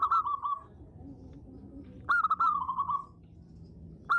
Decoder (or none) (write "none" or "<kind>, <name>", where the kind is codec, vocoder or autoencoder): none